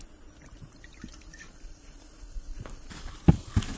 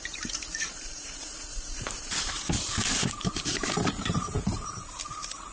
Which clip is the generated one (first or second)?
second